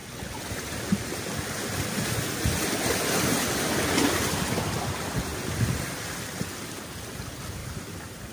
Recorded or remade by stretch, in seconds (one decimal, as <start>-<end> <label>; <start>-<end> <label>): 0.0-7.6 recorded; 7.6-8.3 remade